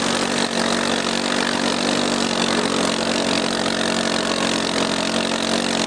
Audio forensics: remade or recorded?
recorded